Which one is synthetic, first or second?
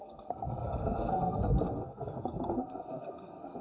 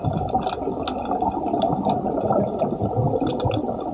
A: first